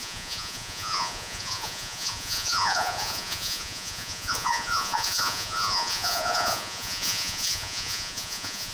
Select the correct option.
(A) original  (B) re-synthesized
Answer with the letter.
B